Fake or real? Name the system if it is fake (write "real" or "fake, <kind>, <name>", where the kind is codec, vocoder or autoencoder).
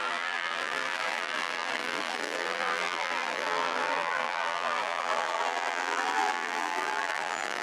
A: fake, vocoder, BigVGAN v2